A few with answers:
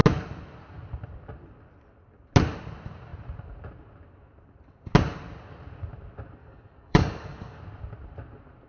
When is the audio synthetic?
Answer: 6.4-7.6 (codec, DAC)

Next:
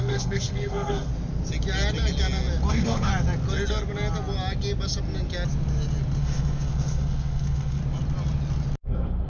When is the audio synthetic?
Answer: 0.0-1.1 (codec, SNAC); 2.7-3.1; 6.2-7.8; 8.8-9.3

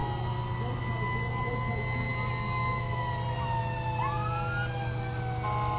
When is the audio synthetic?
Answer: none

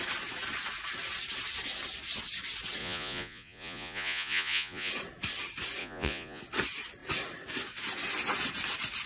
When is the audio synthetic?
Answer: 2.8-4.9 (vocoder, Vocos); 5.8-6.4

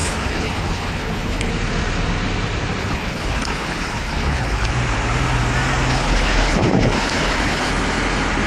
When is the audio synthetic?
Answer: 0.0-1.5 (codec, HILCodec); 2.8-4.7; 5.9-7.7